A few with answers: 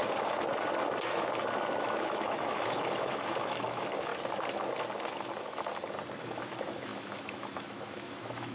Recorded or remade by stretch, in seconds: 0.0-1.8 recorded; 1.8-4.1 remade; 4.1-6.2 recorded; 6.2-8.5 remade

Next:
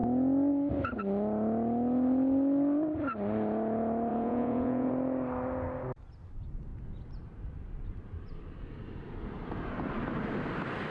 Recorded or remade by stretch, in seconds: 0.0-4.1 recorded; 4.1-4.9 remade; 4.9-10.9 recorded

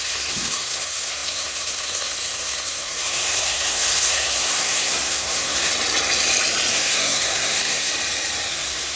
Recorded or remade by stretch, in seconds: 0.0-5.7 remade; 5.7-6.7 recorded; 6.7-7.9 remade; 7.9-8.5 recorded; 8.5-9.0 remade